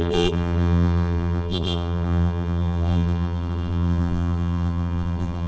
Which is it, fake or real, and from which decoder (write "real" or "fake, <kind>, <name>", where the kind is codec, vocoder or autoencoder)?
fake, vocoder, BigVGAN v2